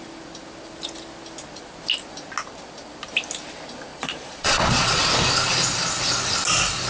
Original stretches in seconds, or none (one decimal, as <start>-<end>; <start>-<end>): 0.0-3.9; 5.0-6.9